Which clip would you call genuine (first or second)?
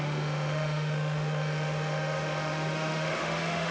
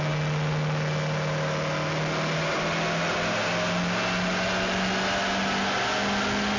second